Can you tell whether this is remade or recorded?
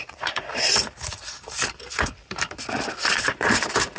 remade